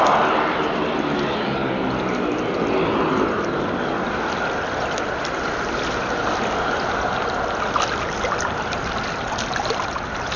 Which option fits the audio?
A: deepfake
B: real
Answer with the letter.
B